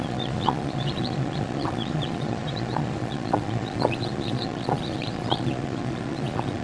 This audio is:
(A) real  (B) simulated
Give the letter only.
B